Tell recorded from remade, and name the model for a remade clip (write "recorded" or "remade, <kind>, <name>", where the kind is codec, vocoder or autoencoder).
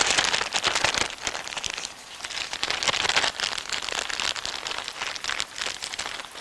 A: recorded